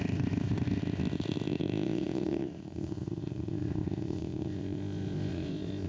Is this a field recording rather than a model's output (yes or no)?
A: no